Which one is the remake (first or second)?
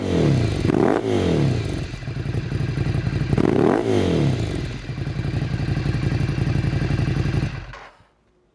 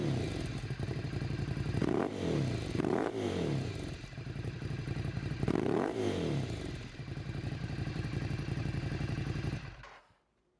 second